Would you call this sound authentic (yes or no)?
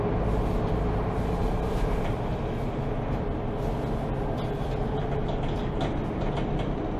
yes